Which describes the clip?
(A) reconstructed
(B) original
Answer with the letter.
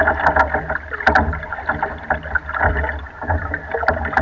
B